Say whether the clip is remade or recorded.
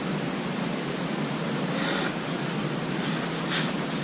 remade